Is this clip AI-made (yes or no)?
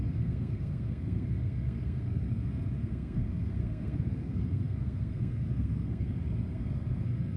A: yes